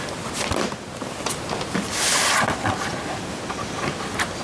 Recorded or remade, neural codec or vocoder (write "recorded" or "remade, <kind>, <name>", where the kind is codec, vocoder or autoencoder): recorded